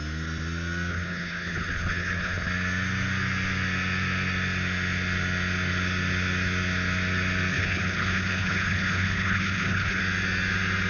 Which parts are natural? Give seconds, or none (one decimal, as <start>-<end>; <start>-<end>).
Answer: 0.0-0.9; 2.5-7.5; 10.0-10.9